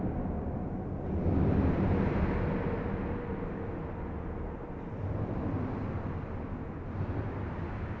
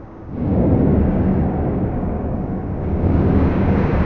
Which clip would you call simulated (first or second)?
second